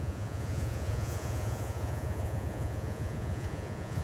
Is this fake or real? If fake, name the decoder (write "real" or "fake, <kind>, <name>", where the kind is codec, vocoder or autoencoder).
fake, vocoder, Vocos